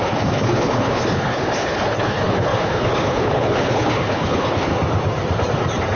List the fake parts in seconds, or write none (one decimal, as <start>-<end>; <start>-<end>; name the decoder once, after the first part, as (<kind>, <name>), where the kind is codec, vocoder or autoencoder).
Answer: 0.0-4.7 (codec, HILCodec)